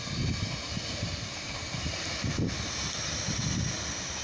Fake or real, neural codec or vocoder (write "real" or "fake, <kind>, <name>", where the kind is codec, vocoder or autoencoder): real